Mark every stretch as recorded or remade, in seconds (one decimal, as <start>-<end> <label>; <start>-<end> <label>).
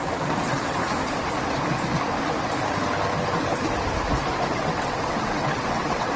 0.0-0.8 remade; 0.8-4.5 recorded; 4.5-6.2 remade